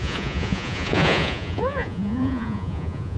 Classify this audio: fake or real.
fake